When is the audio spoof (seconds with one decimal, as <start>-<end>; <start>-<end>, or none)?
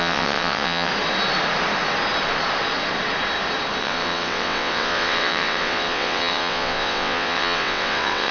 0.0-0.9; 3.8-8.3